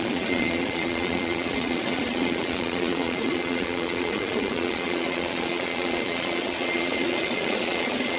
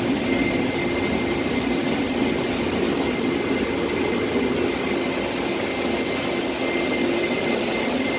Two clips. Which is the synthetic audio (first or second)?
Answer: first